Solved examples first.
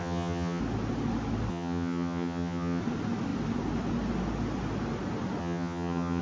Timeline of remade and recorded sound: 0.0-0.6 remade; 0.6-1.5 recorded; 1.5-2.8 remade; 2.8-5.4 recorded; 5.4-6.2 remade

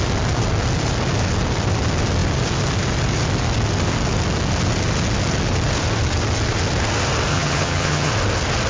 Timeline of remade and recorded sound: 0.0-7.3 recorded; 7.3-8.1 remade; 8.1-8.7 recorded

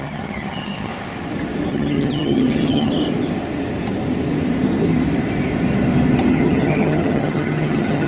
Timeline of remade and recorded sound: 0.0-0.9 remade; 0.9-1.7 recorded; 1.7-2.9 remade; 2.9-6.3 recorded; 6.3-8.1 remade